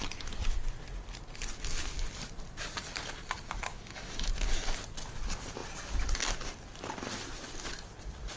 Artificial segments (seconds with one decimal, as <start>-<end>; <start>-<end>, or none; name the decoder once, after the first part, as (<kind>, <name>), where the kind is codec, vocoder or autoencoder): 3.7-4.3 (autoencoder, DAC-VAE)

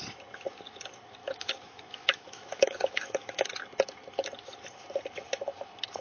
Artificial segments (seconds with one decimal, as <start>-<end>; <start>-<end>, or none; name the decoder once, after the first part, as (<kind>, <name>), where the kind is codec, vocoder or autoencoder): 1.2-3.4 (autoencoder, DAC-VAE)

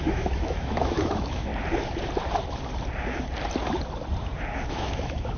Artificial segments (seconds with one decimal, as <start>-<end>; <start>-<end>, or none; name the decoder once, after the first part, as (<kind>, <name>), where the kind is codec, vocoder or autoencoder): 0.0-1.5 (autoencoder, DAC-VAE); 4.7-5.4

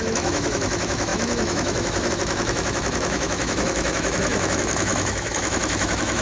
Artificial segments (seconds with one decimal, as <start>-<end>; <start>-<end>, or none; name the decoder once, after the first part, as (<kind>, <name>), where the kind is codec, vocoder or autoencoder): 0.0-6.2 (autoencoder, DAC-VAE)

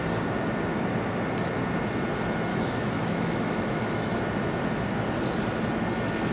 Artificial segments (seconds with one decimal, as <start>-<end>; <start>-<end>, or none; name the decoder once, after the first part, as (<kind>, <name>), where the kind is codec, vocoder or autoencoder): 2.5-4.2 (autoencoder, DAC-VAE)

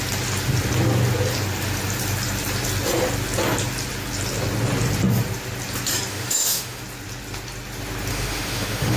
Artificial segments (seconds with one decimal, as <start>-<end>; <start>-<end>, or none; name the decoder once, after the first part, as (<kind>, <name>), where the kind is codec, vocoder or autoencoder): 6.1-6.8 (autoencoder, DAC-VAE); 8.1-9.0

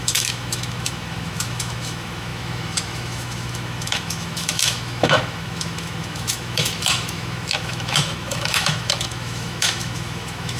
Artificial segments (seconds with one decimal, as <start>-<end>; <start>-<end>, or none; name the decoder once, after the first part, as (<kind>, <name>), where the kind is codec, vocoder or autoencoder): 0.0-10.6 (autoencoder, DAC-VAE)

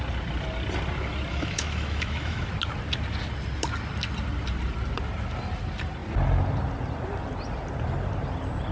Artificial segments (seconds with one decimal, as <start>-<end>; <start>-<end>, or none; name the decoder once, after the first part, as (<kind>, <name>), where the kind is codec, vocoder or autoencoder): 1.3-2.5 (autoencoder, DAC-VAE)